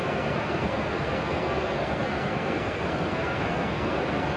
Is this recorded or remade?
remade